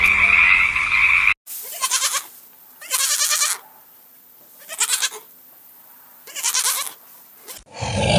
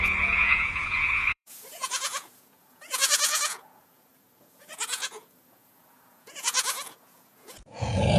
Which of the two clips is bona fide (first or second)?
first